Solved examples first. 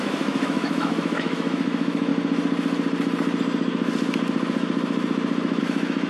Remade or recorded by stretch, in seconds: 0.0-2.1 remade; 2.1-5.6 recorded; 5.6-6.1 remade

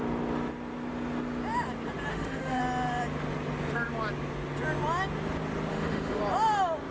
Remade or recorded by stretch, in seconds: 0.0-2.1 recorded; 2.1-2.6 remade; 2.6-5.7 recorded; 5.7-6.2 remade; 6.2-6.9 recorded

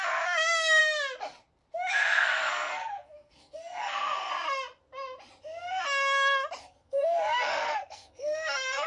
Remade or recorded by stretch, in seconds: 0.0-0.8 remade; 0.8-1.9 recorded; 1.9-4.3 remade; 4.3-6.6 recorded; 6.6-8.9 remade

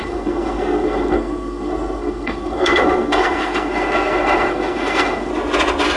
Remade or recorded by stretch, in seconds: 0.0-5.3 remade; 5.3-6.0 recorded

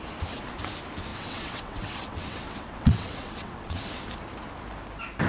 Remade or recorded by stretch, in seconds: 0.0-1.1 recorded; 1.1-3.8 remade; 3.8-5.3 recorded

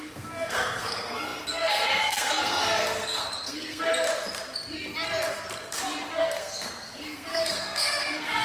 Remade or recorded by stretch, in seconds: 0.0-3.9 remade; 3.9-6.1 recorded; 6.1-8.4 remade

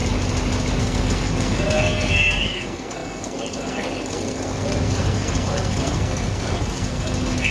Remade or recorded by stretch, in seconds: 0.0-0.8 recorded; 0.8-7.5 remade